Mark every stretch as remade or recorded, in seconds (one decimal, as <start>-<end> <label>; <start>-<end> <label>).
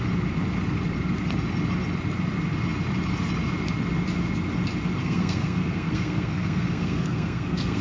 0.0-5.0 recorded; 5.0-7.8 remade